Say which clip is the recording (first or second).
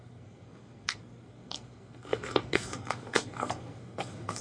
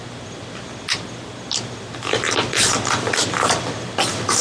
second